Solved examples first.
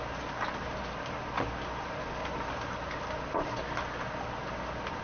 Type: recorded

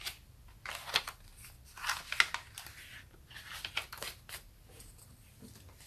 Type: recorded